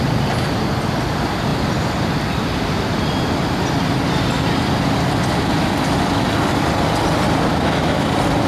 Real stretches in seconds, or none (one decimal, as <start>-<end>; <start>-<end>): 0.0-7.5; 8.1-8.5